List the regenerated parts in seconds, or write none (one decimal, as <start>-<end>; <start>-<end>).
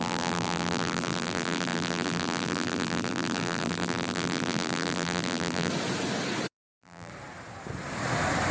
0.0-5.7; 6.5-7.1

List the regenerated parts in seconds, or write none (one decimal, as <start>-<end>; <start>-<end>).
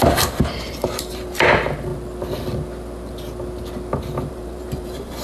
0.0-1.9; 4.3-5.2